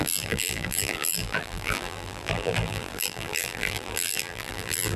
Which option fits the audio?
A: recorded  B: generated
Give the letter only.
B